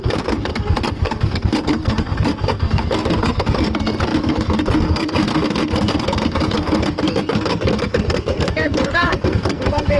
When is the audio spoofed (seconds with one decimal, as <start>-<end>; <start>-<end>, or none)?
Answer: 0.0-10.0